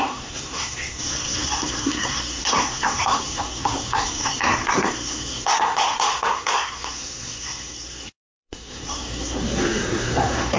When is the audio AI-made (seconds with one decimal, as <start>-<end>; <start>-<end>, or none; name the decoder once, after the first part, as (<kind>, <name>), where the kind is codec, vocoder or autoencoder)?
0.0-10.6 (codec, SNAC)